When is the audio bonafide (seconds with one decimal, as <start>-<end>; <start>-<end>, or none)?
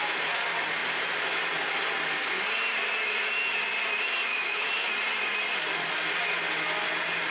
0.0-4.3; 4.9-7.3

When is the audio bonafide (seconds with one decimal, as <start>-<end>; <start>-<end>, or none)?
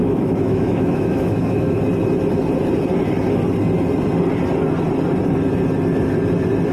1.8-6.7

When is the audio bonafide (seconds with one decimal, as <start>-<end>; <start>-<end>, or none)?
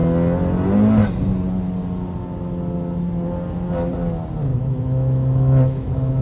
0.0-4.5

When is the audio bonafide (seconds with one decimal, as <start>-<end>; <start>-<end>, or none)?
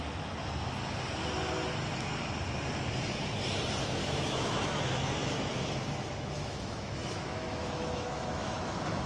0.0-4.0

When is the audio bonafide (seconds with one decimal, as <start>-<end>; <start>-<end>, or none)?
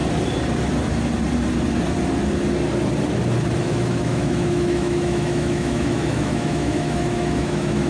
0.0-3.6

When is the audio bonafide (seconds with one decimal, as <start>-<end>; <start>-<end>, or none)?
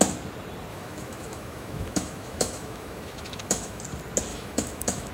0.0-0.7; 3.8-4.3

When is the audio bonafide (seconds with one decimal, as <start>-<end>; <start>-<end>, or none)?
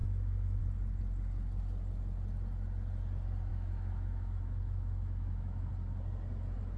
0.6-3.5; 5.7-6.8